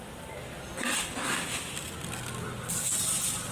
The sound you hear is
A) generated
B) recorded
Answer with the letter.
B